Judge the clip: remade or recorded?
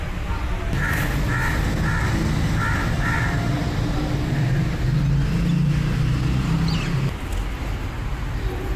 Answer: recorded